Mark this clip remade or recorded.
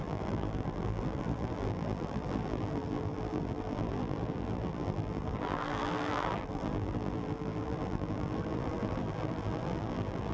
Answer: remade